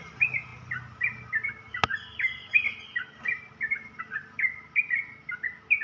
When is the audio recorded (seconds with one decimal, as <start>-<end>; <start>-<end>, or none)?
0.0-5.8